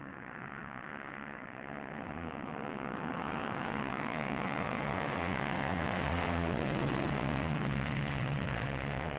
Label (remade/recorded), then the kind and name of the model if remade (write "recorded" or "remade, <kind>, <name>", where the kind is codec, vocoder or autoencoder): remade, vocoder, WaveNeXt